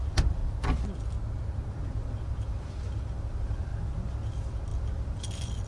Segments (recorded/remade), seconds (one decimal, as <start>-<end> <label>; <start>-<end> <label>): 0.0-0.4 remade; 0.4-1.7 recorded; 1.7-5.7 remade